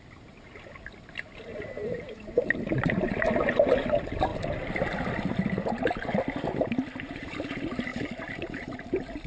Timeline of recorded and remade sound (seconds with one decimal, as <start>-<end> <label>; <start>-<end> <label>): 0.0-1.5 recorded; 1.5-3.3 remade; 3.3-7.9 recorded; 7.9-8.8 remade; 8.8-9.3 recorded